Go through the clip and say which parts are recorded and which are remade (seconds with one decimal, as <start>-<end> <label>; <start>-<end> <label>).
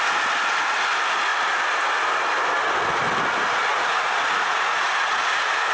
0.0-3.7 recorded; 3.7-5.7 remade